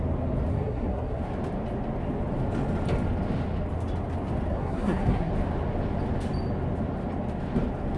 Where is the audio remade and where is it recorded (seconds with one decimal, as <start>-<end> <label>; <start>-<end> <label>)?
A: 0.0-0.5 recorded; 0.5-1.2 remade; 1.2-4.5 recorded; 4.5-5.3 remade; 5.3-8.0 recorded